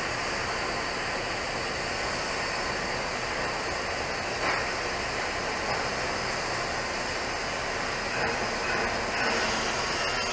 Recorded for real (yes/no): yes